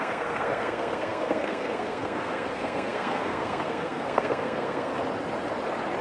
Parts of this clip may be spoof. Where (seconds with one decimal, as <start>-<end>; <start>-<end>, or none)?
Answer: 0.0-4.9